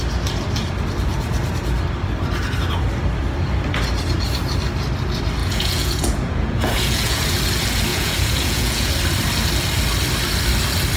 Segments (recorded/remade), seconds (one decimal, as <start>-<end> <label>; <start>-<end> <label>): 0.0-5.4 recorded; 5.4-7.2 remade; 7.2-7.9 recorded; 7.9-8.9 remade; 8.9-11.0 recorded